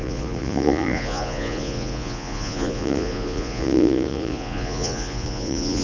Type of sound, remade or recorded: remade